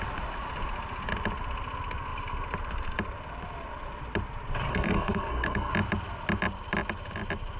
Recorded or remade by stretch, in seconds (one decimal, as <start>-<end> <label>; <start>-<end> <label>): 0.0-4.7 recorded; 4.7-5.7 remade; 5.7-7.6 recorded